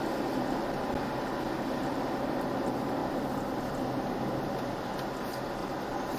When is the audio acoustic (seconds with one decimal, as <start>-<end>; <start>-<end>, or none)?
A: 0.0-3.0; 3.7-5.6